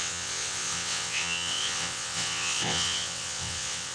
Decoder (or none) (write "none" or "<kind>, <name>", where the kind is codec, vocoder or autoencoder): vocoder, WaveNeXt